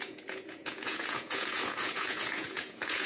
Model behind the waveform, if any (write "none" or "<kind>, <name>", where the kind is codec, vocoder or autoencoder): vocoder, Vocos